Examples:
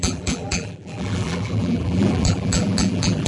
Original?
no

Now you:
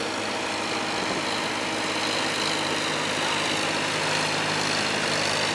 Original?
yes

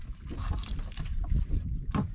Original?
yes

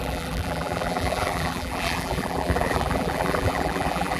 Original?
no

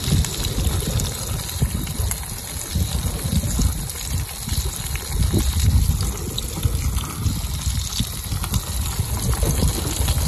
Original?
yes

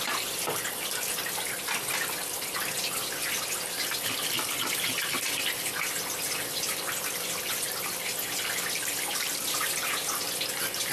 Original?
yes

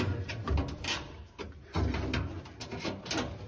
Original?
yes